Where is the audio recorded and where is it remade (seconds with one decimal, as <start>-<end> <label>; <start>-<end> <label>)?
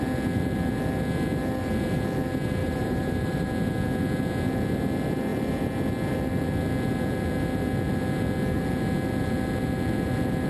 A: 0.0-2.6 recorded; 2.6-3.5 remade; 3.5-10.5 recorded